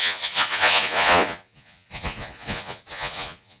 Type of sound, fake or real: fake